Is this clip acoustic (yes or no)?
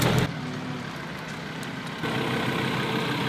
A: yes